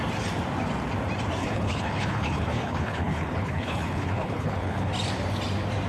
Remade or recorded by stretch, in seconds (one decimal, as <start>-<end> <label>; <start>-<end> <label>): 0.0-1.4 recorded; 1.4-4.9 remade; 4.9-5.9 recorded